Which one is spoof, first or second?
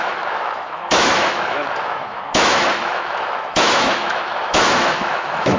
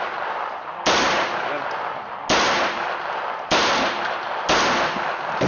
first